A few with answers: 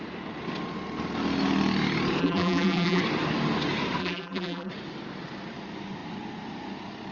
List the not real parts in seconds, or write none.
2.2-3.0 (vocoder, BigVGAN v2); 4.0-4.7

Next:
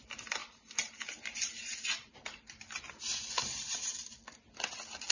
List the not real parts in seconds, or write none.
0.4-2.8 (vocoder, BigVGAN v2); 3.4-4.1

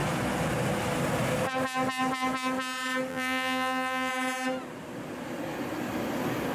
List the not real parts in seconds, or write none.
3.1-4.1 (vocoder, BigVGAN v2)

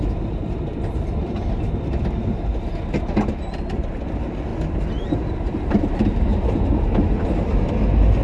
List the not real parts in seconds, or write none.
0.7-1.6 (vocoder, BigVGAN v2); 4.5-5.8; 6.3-7.7

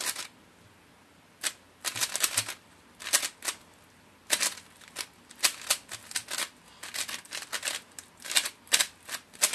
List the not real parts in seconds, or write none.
none

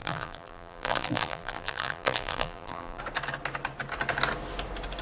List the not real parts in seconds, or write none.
0.0-3.0 (vocoder, BigVGAN v2)

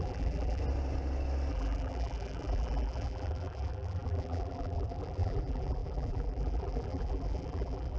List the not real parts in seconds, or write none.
0.0-0.6 (vocoder, BigVGAN v2); 1.5-8.0

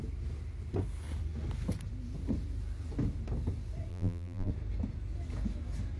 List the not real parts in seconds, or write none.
3.9-4.5 (vocoder, BigVGAN v2)